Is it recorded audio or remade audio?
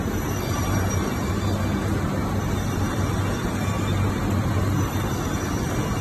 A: recorded